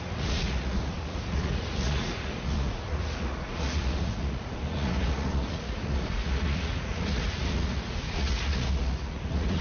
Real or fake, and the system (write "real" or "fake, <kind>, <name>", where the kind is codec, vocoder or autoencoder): fake, vocoder, Vocos